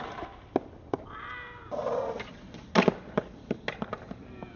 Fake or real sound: real